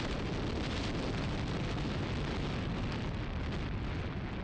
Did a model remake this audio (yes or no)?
no